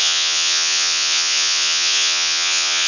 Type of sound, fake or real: fake